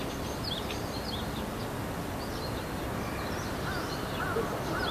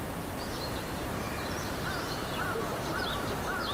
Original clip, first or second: first